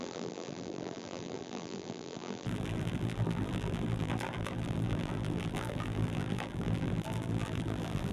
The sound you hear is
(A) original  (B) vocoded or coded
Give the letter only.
B